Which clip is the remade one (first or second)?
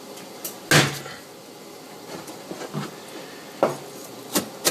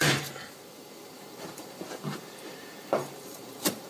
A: second